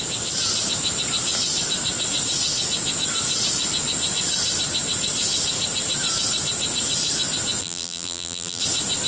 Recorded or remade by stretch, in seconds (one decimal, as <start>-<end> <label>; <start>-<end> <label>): 0.0-7.6 recorded; 7.6-8.6 remade; 8.6-9.1 recorded